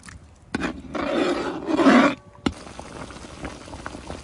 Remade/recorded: recorded